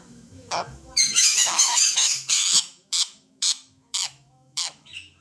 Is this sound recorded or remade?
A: remade